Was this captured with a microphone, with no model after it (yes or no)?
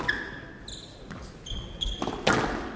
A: yes